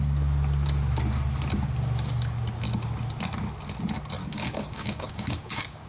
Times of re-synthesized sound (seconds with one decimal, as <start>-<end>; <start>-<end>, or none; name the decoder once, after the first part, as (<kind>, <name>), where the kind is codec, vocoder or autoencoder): 4.2-5.9 (codec, DAC)